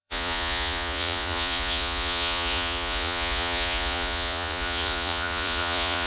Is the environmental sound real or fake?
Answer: fake